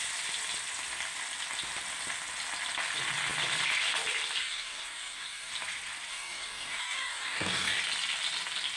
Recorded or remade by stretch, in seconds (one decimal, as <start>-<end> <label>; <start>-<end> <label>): 0.0-4.4 recorded; 4.4-5.5 remade; 5.5-6.1 recorded; 6.1-7.8 remade; 7.8-8.8 recorded